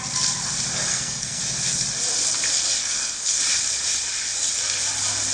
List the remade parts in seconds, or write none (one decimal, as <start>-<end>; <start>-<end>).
0.9-1.4; 2.8-3.4